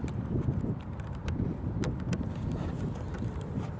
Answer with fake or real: fake